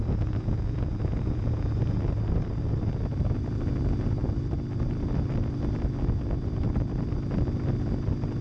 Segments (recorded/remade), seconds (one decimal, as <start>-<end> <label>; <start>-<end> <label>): 0.0-1.7 remade; 1.7-8.4 recorded